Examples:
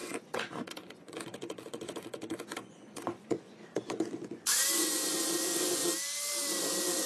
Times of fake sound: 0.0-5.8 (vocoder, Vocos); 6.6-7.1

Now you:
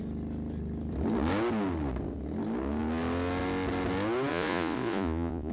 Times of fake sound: 4.3-5.5 (vocoder, Vocos)

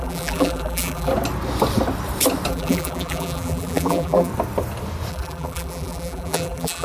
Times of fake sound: 0.0-1.1 (vocoder, BigVGAN v2); 2.5-4.3; 5.1-6.8